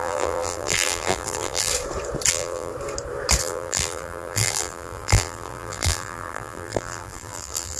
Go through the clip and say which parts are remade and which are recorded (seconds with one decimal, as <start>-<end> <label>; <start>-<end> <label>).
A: 0.0-1.7 remade; 1.7-2.3 recorded; 2.3-2.7 remade; 2.7-3.4 recorded; 3.4-7.8 remade